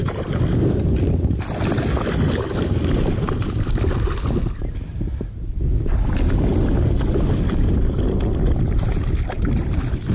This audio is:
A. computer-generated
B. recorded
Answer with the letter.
B